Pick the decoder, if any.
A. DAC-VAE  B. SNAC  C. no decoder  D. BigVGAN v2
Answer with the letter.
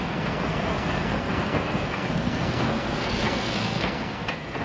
B